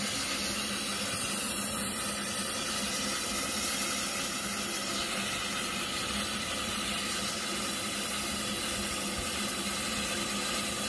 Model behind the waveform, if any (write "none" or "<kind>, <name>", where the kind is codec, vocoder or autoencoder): none